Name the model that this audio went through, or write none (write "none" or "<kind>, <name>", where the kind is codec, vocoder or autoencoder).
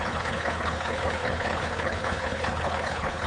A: codec, HILCodec